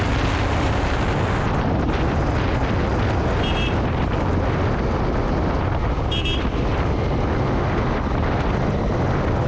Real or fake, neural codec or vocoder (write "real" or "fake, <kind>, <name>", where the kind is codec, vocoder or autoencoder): real